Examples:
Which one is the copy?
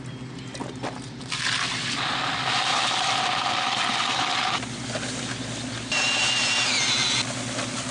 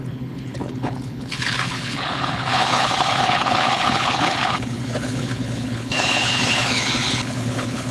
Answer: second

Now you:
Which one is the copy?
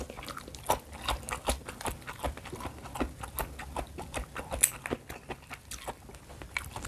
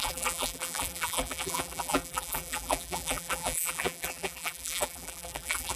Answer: second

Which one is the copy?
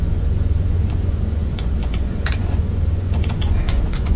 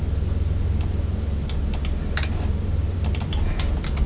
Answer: first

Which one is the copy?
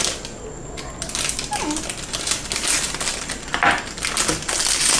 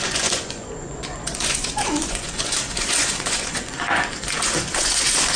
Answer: second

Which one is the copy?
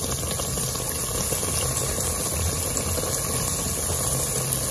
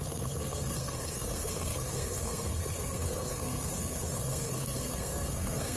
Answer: second